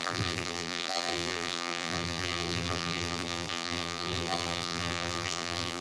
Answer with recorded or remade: remade